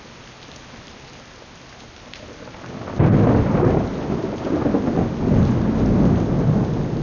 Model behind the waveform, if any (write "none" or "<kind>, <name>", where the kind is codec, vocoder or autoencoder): none